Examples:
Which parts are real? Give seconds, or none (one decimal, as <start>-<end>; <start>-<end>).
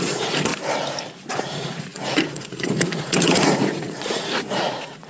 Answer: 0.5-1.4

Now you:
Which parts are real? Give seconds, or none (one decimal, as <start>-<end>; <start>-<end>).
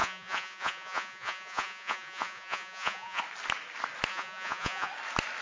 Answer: 3.2-4.1; 4.9-5.4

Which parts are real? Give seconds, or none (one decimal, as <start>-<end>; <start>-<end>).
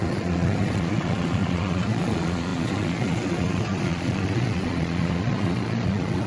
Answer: none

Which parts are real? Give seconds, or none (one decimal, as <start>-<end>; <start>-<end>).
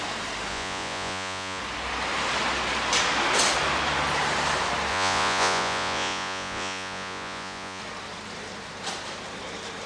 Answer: 0.0-0.5; 1.6-4.9; 7.8-9.9